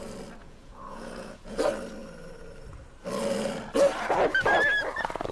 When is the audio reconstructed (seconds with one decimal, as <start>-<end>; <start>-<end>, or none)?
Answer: 0.4-1.6